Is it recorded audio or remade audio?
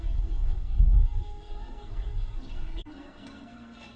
remade